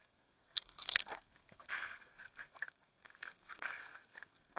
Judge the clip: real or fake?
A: fake